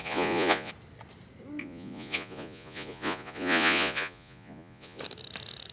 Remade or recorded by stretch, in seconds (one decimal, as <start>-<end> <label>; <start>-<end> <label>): 0.0-0.7 remade; 0.7-1.6 recorded; 1.6-5.0 remade; 5.0-5.7 recorded